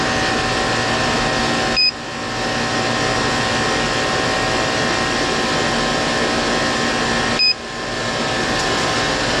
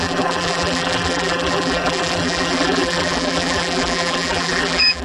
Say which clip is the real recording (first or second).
first